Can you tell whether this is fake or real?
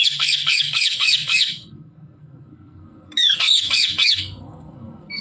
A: fake